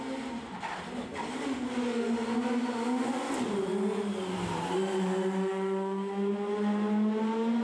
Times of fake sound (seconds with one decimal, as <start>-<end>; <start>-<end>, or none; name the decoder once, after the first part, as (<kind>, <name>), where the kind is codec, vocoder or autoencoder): none